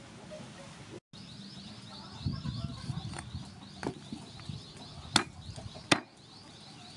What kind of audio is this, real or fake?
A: real